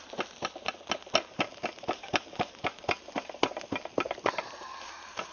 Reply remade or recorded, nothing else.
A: recorded